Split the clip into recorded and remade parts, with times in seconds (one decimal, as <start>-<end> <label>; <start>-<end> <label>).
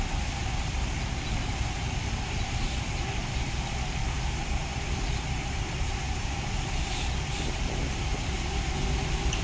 0.0-0.4 recorded; 0.4-3.5 remade; 3.5-4.0 recorded; 4.0-9.4 remade